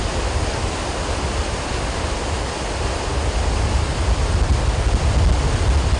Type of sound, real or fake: real